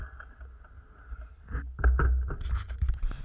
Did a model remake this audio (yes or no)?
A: no